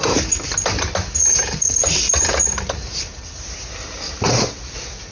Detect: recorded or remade recorded